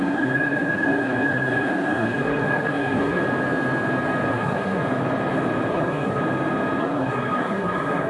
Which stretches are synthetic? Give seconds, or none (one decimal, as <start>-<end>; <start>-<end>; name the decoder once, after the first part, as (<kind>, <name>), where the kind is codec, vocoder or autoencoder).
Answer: 0.0-3.2 (codec, SNAC); 4.3-4.8; 5.7-6.2; 6.8-8.1